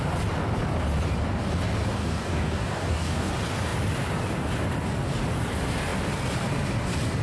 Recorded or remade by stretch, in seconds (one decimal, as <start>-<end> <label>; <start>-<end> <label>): 0.0-2.0 recorded; 2.0-3.3 remade; 3.3-7.2 recorded